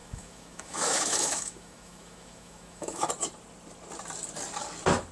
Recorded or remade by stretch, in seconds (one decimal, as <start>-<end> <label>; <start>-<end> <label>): 0.0-3.1 remade; 3.1-5.1 recorded